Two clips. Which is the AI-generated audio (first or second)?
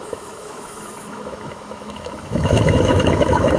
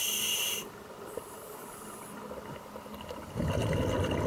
first